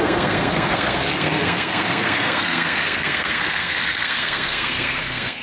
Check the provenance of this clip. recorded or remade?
remade